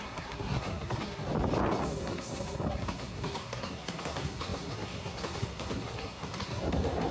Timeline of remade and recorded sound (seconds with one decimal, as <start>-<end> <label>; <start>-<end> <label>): 0.0-1.3 remade; 1.3-1.8 recorded; 1.8-7.1 remade